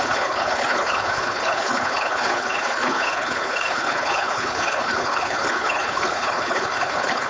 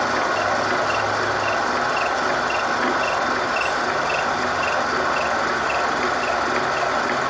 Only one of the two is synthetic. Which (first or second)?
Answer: first